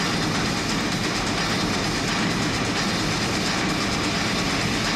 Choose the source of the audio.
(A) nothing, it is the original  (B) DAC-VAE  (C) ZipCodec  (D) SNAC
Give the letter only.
A